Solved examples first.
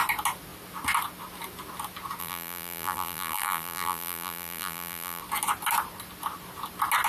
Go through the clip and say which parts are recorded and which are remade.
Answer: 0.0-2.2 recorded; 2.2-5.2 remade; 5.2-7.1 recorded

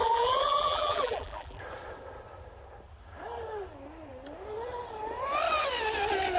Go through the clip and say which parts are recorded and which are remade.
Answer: 0.0-1.6 remade; 1.6-6.4 recorded

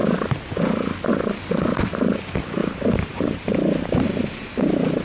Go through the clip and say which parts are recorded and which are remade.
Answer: 0.0-2.6 recorded; 2.6-4.5 remade; 4.5-5.0 recorded

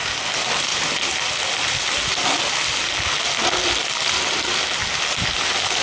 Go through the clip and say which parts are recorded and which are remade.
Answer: 0.0-4.8 recorded; 4.8-5.8 remade

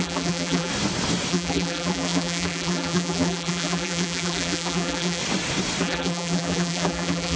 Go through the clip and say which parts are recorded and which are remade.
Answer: 0.0-0.7 remade; 0.7-1.3 recorded; 1.3-5.2 remade; 5.2-5.8 recorded; 5.8-7.4 remade

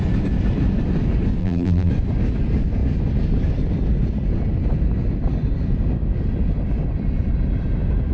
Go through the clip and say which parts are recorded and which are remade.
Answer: 0.0-1.4 recorded; 1.4-1.9 remade; 1.9-8.1 recorded

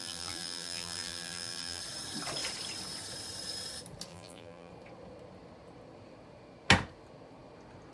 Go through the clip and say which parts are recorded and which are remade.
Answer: 0.0-1.8 remade; 1.8-4.1 recorded; 4.1-4.7 remade; 4.7-7.9 recorded